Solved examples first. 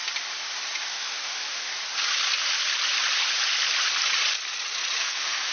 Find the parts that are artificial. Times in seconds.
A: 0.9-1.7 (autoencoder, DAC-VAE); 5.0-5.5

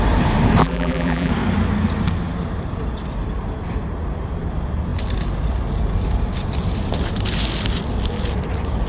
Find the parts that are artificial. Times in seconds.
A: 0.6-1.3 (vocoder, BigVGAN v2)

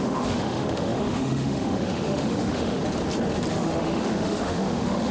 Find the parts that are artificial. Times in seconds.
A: 0.0-2.8 (autoencoder, DAC-VAE); 3.5-5.1

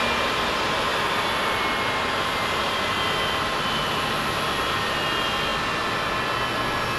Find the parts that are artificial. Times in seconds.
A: none

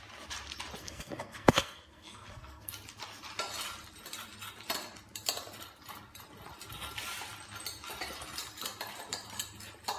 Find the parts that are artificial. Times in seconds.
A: 0.8-2.7 (codec, SNAC)